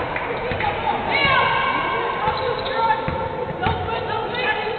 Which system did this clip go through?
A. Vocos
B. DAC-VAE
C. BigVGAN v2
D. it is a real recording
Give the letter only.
D